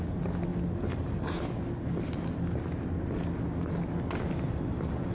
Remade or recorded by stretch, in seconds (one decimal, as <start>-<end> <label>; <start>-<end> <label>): 0.0-5.1 recorded

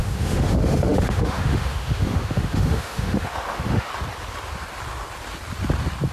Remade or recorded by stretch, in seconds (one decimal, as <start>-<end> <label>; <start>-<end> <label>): 0.0-3.9 remade; 3.9-6.1 recorded

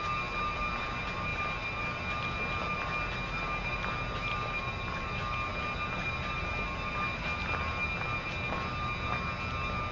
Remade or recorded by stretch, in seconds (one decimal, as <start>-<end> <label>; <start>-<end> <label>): 0.0-9.9 recorded

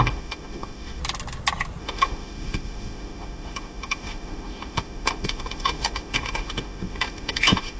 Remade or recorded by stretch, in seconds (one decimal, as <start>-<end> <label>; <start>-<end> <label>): 0.0-1.0 remade; 1.0-1.8 recorded; 1.8-7.8 remade

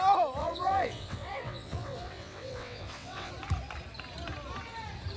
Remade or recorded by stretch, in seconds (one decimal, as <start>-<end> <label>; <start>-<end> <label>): 0.0-0.4 recorded; 0.4-3.3 remade; 3.3-5.2 recorded

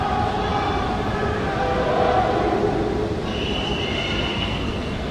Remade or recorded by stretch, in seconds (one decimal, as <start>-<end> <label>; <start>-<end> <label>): 0.0-4.3 recorded; 4.3-5.1 remade

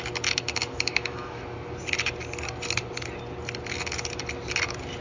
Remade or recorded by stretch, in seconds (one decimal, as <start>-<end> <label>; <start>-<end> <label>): 0.0-0.6 recorded; 0.6-1.4 remade; 1.4-5.0 recorded